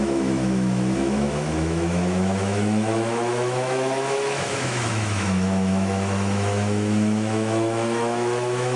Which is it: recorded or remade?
remade